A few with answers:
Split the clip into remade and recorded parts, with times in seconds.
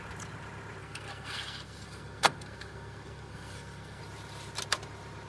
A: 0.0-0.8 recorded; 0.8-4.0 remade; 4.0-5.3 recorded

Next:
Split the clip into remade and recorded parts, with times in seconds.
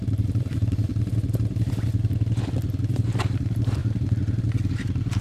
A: 0.0-0.9 remade; 0.9-2.9 recorded; 2.9-3.8 remade; 3.8-4.7 recorded; 4.7-5.2 remade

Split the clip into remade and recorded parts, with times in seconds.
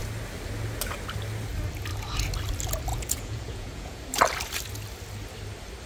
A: 0.0-2.9 recorded; 2.9-4.0 remade; 4.0-5.9 recorded